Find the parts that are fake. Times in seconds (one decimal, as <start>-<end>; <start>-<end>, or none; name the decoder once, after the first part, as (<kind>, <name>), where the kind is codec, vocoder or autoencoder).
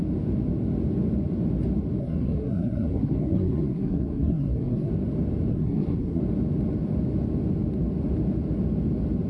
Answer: 2.0-4.9 (codec, SNAC); 5.5-6.2